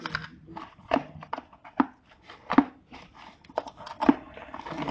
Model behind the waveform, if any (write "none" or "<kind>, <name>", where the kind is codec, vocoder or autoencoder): none